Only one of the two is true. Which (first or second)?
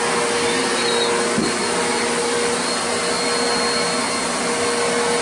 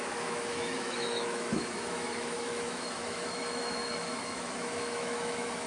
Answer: first